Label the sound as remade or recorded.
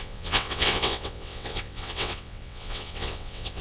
remade